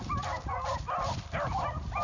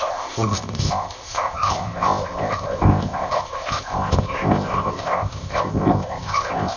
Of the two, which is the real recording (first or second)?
first